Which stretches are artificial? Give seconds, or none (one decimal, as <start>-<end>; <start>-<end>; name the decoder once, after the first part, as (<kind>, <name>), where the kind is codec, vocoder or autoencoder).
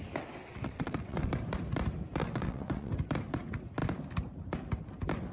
0.5-1.3 (vocoder, WaveNeXt); 2.2-2.9